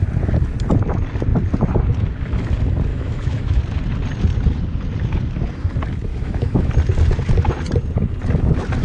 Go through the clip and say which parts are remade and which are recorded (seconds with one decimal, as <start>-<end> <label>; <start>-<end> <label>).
0.0-2.9 recorded; 2.9-3.6 remade; 3.6-6.1 recorded; 6.1-6.7 remade; 6.7-8.8 recorded